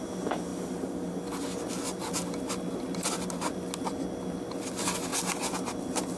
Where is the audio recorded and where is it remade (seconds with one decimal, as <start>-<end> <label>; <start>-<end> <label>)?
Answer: 0.0-6.2 recorded